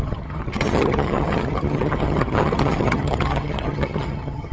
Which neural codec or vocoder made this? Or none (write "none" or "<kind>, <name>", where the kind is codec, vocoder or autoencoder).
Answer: vocoder, HiFi-GAN